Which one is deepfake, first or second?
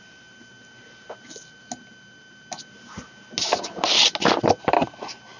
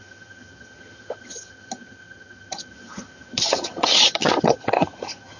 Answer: second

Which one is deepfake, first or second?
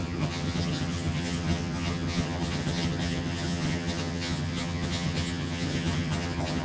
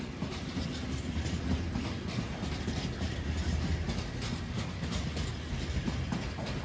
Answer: first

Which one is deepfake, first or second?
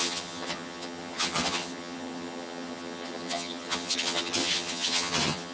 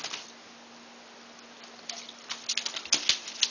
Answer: first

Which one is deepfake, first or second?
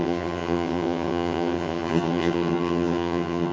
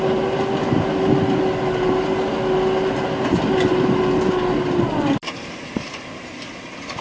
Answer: first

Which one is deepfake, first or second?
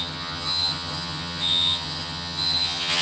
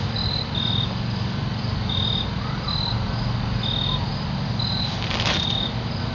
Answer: first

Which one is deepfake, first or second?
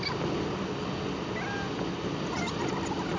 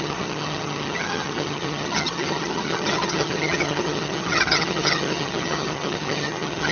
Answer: second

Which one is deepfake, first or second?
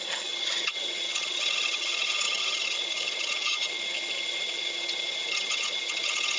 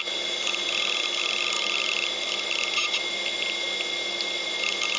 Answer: first